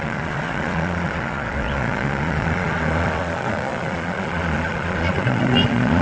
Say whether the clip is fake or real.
fake